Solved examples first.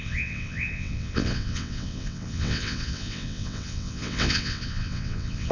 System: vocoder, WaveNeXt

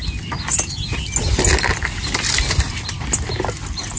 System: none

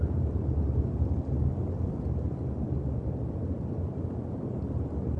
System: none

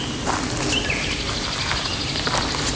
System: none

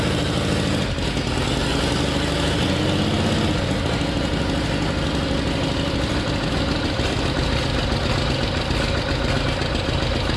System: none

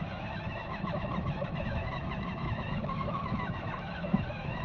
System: autoencoder, DAC-VAE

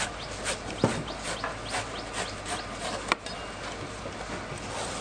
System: none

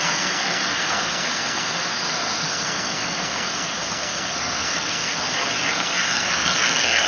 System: codec, SNAC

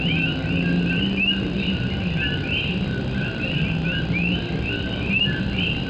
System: none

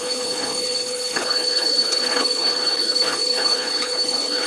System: codec, HILCodec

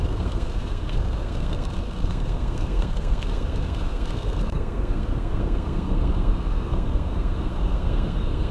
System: codec, SNAC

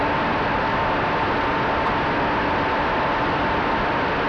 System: none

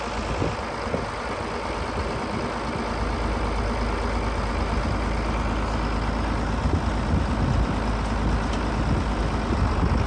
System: none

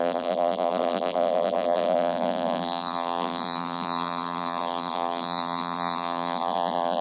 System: vocoder, BigVGAN v2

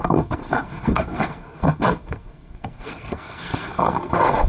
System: codec, SNAC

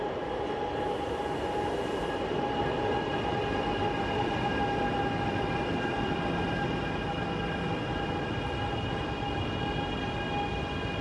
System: none